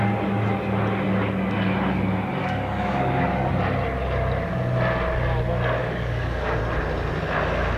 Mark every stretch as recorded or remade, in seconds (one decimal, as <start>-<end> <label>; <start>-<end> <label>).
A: 0.0-2.4 recorded; 2.4-3.5 remade; 3.5-5.8 recorded; 5.8-6.6 remade; 6.6-7.8 recorded

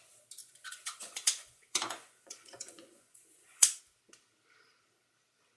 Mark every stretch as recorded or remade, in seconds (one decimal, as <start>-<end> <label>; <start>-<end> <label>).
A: 0.0-0.4 recorded; 0.4-3.8 remade; 3.8-5.6 recorded